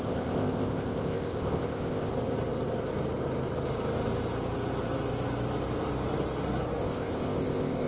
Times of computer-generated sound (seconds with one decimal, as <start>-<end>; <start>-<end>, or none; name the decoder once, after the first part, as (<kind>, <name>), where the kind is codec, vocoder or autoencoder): 0.0-2.1 (codec, ZipCodec); 6.8-7.9